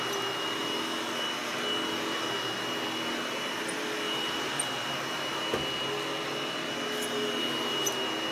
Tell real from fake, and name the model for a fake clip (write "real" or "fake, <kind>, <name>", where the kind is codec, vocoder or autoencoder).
real